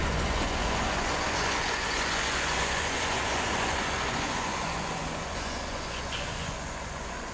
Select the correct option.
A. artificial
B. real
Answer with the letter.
A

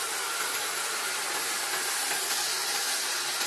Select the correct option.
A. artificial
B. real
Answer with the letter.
B